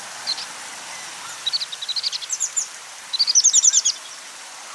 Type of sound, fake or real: real